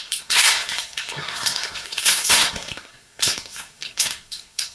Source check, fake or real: fake